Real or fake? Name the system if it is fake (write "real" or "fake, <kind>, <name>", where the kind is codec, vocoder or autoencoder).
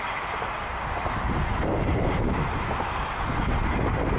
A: real